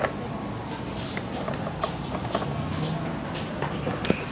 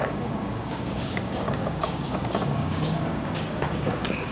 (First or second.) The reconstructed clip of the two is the second